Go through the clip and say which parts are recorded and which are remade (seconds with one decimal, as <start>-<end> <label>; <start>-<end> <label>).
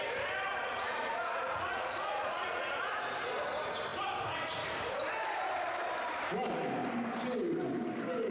0.0-0.5 recorded; 0.5-2.9 remade; 2.9-8.3 recorded